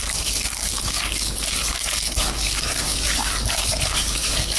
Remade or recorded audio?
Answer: remade